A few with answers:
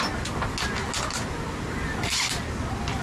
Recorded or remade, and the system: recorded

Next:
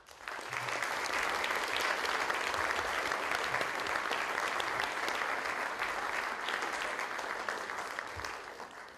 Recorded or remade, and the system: recorded